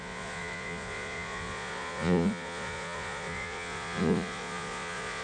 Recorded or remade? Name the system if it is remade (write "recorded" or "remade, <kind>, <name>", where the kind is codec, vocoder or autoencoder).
remade, vocoder, Vocos